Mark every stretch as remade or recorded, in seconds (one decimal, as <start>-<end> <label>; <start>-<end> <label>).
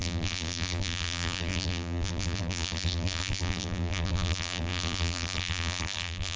0.0-6.4 remade